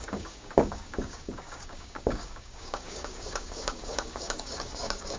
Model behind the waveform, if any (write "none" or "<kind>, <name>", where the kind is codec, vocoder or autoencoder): codec, DAC